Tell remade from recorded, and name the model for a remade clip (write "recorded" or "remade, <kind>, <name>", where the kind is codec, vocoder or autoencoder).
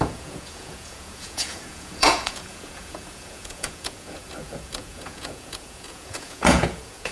remade, vocoder, Vocos